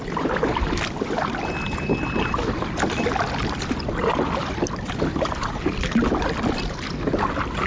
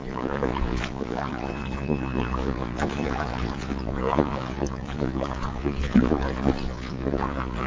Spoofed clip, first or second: second